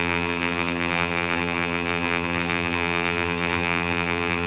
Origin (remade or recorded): remade